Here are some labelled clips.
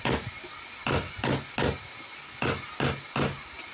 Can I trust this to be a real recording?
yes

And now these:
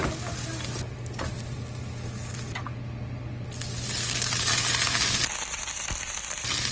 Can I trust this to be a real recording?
yes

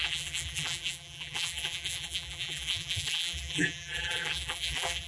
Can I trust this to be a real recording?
no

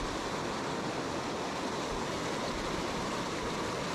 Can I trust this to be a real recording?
yes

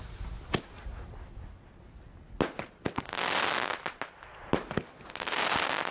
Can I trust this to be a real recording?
yes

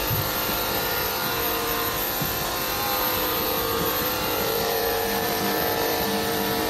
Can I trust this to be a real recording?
no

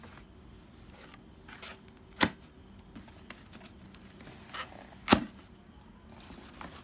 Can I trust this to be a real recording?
yes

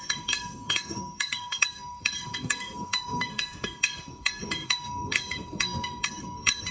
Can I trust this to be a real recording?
no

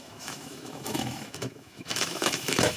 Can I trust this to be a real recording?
no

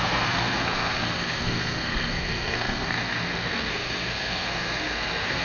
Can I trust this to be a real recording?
no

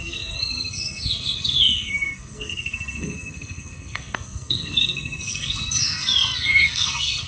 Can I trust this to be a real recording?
no